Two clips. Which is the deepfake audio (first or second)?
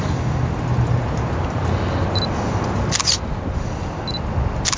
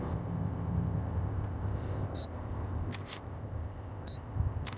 second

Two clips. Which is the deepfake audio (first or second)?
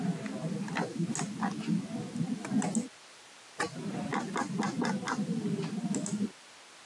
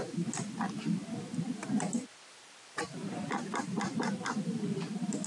second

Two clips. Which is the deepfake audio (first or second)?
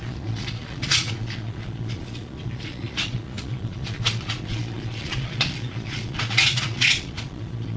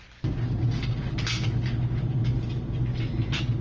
first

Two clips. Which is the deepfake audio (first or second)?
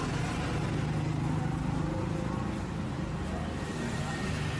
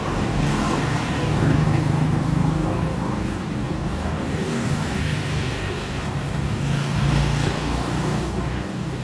second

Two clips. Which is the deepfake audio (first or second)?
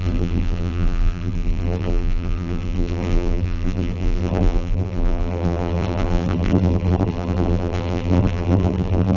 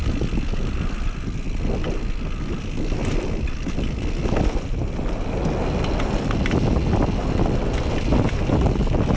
first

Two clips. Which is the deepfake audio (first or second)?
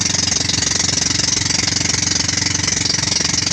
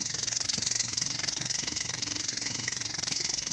second